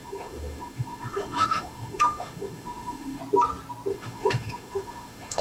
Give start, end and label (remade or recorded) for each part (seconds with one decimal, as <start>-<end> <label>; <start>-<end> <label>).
0.0-3.2 remade; 3.2-3.9 recorded; 3.9-5.4 remade